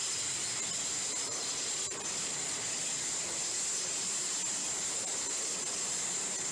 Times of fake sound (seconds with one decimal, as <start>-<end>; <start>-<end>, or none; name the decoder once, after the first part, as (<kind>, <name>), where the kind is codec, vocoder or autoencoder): none